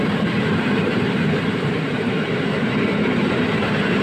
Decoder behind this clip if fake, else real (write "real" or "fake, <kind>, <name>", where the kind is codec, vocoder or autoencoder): fake, vocoder, BigVGAN v2